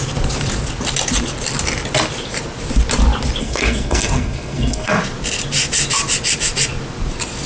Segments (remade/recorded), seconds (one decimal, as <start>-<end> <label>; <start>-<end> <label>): 0.0-3.4 recorded; 3.4-5.0 remade; 5.0-7.5 recorded